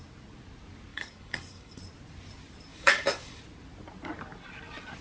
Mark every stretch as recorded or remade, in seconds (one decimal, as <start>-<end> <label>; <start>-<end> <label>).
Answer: 0.0-0.9 recorded; 0.9-1.8 remade; 1.8-2.7 recorded; 2.7-3.4 remade; 3.4-5.0 recorded